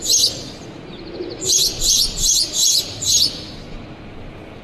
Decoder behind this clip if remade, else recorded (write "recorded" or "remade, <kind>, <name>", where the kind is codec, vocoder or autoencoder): recorded